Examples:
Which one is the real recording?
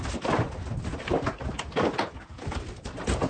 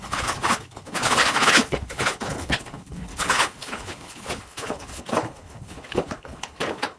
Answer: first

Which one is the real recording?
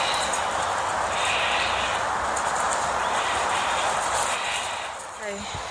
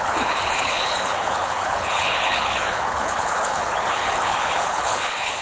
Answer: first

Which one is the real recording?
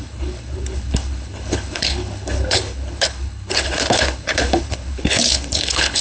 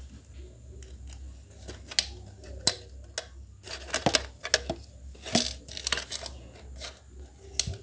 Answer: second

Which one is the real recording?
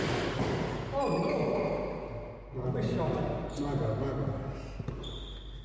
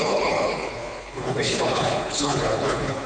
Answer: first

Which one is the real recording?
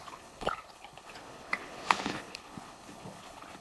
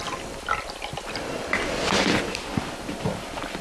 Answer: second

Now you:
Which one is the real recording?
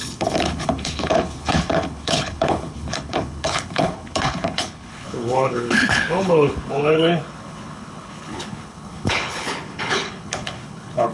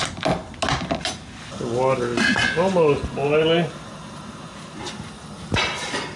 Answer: second